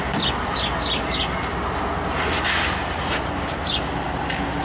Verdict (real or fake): real